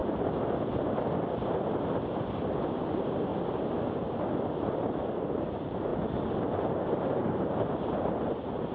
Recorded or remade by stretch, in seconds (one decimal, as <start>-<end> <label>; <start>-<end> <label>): 0.0-2.6 recorded; 2.6-3.3 remade; 3.3-5.1 recorded; 5.1-5.9 remade; 5.9-6.6 recorded; 6.6-8.7 remade